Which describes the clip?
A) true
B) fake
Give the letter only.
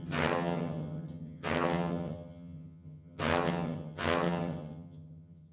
B